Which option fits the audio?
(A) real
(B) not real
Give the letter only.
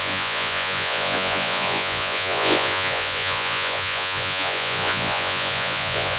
B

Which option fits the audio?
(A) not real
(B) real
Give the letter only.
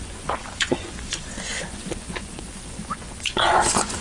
A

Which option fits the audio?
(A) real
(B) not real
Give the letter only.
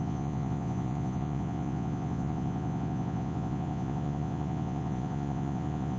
B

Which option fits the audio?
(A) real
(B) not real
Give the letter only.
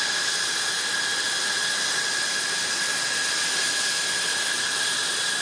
A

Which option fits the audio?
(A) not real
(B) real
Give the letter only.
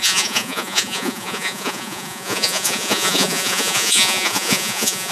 A